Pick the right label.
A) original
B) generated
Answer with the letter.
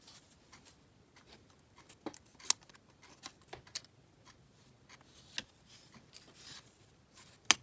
A